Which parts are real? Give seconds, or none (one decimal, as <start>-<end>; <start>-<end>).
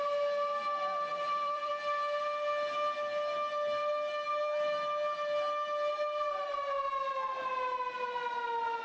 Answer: 0.0-1.1; 1.7-8.8